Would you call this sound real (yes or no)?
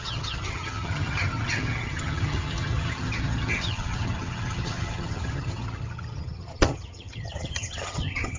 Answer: no